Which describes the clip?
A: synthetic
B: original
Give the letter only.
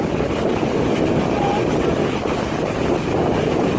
B